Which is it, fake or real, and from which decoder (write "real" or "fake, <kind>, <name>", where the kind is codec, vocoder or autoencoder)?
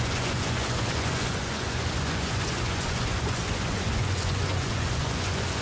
fake, vocoder, Vocos